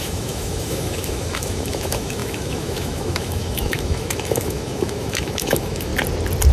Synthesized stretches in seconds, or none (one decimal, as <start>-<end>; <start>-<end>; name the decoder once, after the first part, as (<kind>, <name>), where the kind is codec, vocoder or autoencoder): 0.0-5.9 (autoencoder, DAC-VAE)